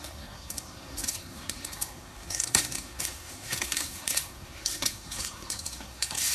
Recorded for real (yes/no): no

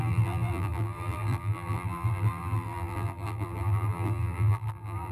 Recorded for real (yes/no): no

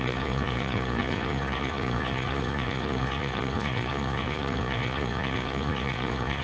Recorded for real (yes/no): no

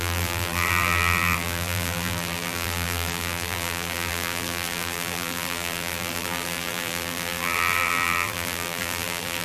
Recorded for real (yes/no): no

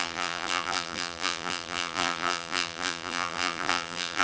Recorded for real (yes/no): no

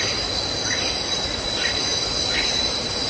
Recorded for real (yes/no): yes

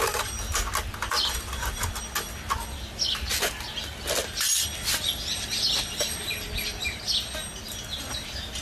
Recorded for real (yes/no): yes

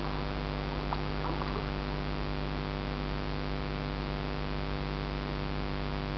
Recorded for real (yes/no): yes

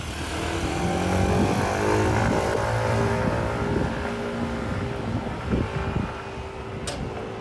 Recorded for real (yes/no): yes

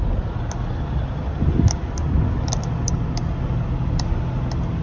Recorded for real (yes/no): yes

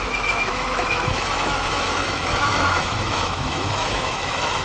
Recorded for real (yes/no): no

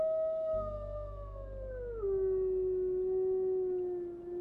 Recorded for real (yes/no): yes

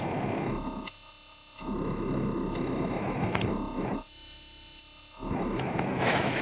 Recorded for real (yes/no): no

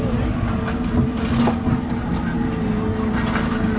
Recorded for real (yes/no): yes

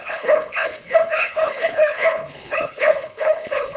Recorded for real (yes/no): no